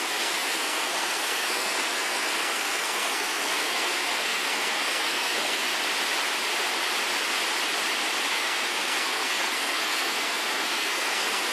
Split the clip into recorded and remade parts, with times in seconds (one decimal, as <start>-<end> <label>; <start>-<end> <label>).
0.0-5.7 remade; 5.7-8.3 recorded; 8.3-11.5 remade